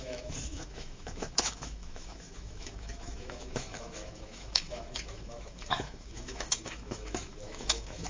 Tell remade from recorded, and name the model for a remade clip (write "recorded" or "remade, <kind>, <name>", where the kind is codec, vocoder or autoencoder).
remade, autoencoder, DAC-VAE